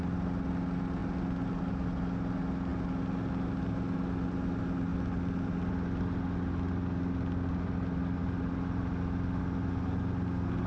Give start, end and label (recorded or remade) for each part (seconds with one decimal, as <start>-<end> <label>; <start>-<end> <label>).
0.0-10.7 recorded